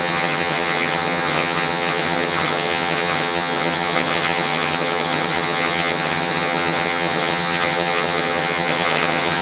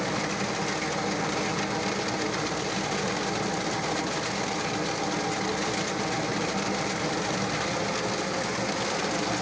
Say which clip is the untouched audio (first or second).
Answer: second